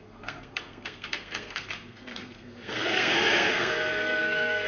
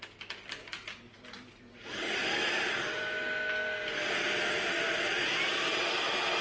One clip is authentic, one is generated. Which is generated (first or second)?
first